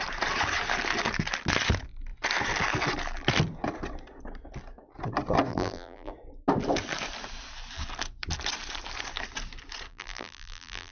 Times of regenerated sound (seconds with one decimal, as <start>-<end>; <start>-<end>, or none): 5.5-6.1; 9.9-10.9